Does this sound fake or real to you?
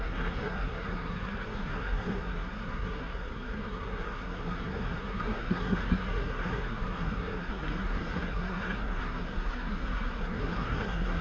fake